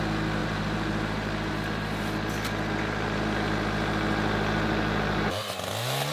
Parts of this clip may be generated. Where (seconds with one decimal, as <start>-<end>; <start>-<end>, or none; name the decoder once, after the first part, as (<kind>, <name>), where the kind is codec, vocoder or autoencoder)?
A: 0.4-1.5 (vocoder, BigVGAN v2)